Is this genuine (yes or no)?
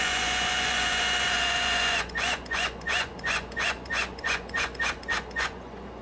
no